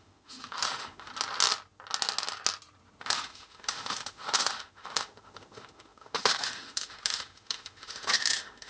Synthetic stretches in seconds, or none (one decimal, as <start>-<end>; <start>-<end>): 0.0-1.1; 3.0-8.7